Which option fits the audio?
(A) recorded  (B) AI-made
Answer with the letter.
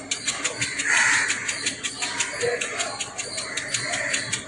A